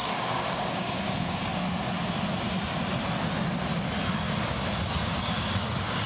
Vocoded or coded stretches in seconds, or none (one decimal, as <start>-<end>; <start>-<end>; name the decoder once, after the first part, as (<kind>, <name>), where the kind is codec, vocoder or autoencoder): 0.0-1.5 (codec, DAC); 5.2-6.1